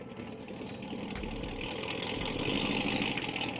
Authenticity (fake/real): real